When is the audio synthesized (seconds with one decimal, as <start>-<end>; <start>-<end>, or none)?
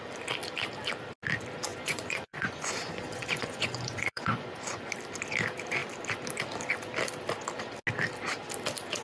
1.7-4.9